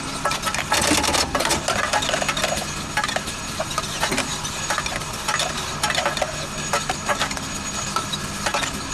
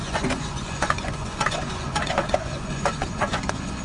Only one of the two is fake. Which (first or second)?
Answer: second